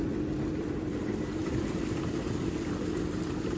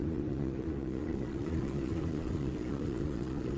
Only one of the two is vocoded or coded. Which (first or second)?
second